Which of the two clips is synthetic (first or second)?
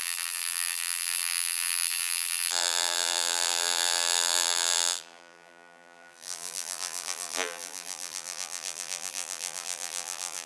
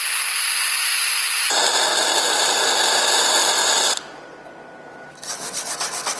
first